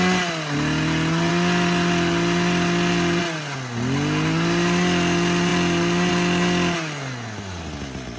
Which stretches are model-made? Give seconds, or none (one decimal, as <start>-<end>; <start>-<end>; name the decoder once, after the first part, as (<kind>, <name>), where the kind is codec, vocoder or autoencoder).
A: none